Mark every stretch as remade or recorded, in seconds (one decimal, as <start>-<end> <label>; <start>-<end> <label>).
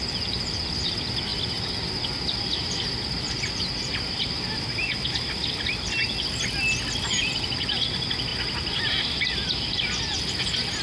0.0-10.8 recorded